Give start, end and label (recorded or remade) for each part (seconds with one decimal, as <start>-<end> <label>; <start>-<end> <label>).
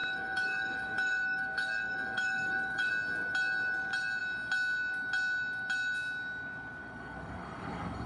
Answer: 0.0-2.9 remade; 2.9-6.8 recorded; 6.8-8.1 remade